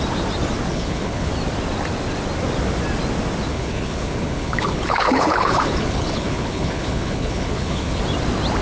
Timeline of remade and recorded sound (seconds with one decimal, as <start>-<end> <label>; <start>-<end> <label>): 0.0-0.7 recorded; 0.7-1.3 remade; 1.3-3.5 recorded; 3.5-8.0 remade; 8.0-8.6 recorded